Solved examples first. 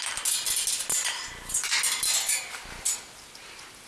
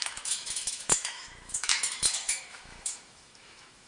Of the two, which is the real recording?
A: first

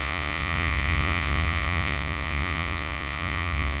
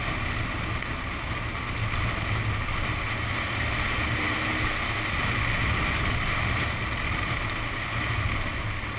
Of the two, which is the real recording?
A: second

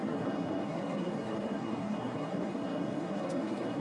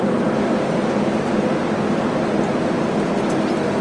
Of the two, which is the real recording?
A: second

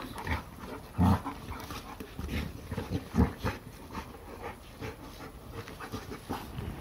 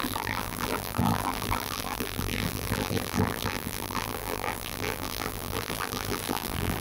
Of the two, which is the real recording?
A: first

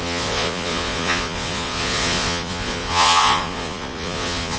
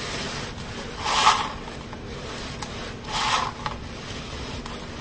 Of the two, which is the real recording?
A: second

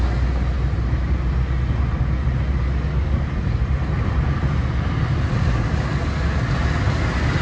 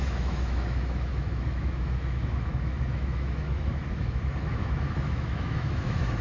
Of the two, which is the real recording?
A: first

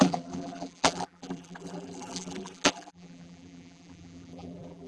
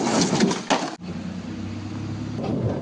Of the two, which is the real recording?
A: second